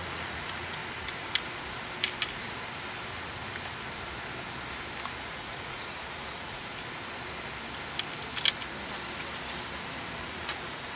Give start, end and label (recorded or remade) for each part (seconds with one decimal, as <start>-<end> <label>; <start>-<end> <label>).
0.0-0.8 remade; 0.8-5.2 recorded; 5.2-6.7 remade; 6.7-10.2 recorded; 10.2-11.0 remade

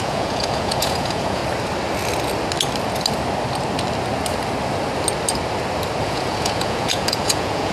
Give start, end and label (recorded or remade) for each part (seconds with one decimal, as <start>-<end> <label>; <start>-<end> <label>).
0.0-1.4 remade; 1.4-6.0 recorded; 6.0-7.7 remade

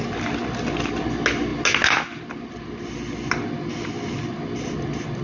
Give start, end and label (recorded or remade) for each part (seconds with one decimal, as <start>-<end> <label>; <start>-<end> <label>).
0.0-5.2 recorded

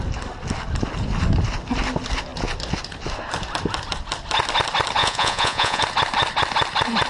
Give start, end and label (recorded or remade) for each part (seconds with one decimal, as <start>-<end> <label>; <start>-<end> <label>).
0.0-5.0 recorded; 5.0-5.8 remade; 5.8-7.1 recorded

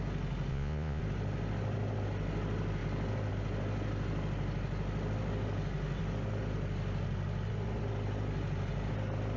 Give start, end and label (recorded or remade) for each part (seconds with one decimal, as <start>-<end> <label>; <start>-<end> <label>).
0.0-0.5 recorded; 0.5-1.0 remade; 1.0-9.4 recorded